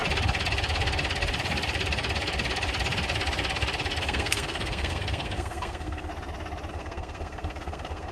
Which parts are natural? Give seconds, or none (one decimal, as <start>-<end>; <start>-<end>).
0.0-4.0; 6.1-6.7